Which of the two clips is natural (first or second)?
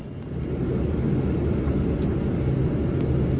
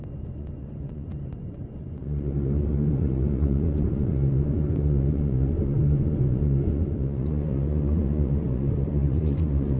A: first